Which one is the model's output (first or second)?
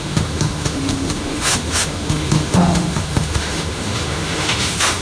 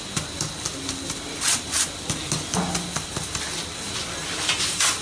first